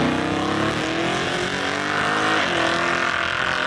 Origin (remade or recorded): recorded